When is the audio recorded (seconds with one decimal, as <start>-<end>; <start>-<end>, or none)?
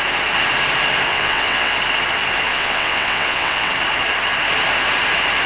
0.0-1.1; 1.7-2.5; 3.7-5.5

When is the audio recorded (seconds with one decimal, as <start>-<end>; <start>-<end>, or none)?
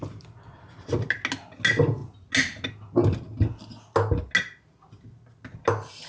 0.0-6.1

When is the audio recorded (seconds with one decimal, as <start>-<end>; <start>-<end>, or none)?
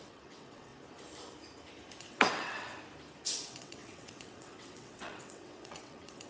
0.7-2.0; 2.7-3.4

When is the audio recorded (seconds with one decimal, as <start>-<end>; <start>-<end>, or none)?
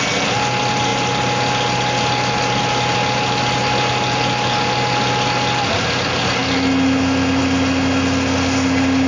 0.0-9.1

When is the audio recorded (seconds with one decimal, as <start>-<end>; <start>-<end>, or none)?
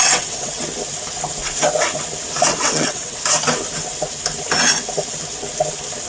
0.6-2.5; 3.2-6.1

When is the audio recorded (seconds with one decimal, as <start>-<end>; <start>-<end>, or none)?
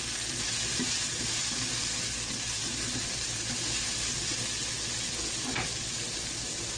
0.0-6.8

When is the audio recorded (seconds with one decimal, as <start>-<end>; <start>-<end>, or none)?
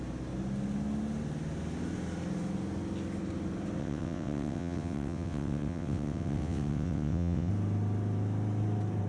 0.0-3.8; 7.5-9.1